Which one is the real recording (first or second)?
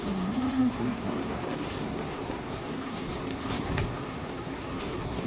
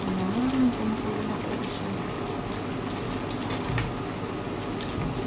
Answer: second